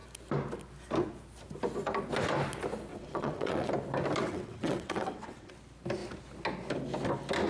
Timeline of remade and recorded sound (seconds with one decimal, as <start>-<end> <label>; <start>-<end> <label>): 0.0-2.9 recorded; 2.9-3.7 remade; 3.7-4.2 recorded; 4.2-5.5 remade; 5.5-7.5 recorded